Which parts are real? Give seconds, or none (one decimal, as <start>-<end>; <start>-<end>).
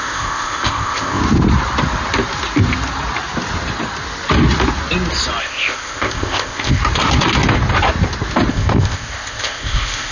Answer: 1.2-5.4; 6.8-8.5